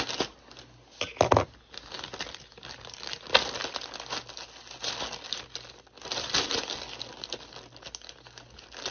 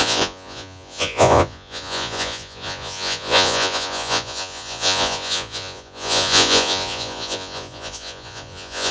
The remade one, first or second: second